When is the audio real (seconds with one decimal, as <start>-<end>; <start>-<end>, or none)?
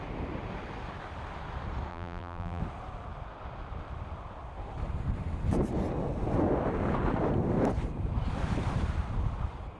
0.0-1.9; 2.6-9.8